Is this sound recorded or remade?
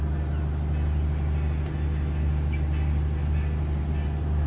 recorded